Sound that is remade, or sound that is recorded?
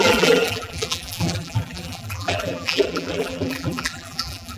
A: remade